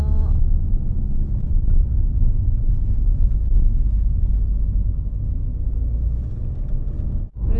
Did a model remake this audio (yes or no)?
no